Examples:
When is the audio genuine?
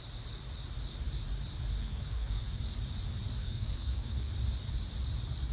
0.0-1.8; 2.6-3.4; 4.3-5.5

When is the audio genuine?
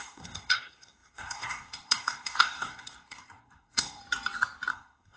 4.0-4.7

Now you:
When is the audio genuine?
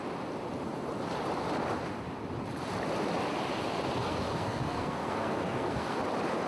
0.0-4.0; 6.0-6.5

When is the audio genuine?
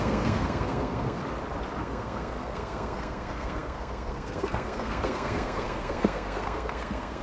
1.2-1.8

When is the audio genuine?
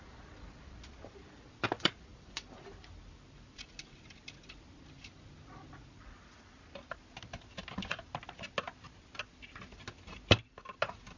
0.0-11.2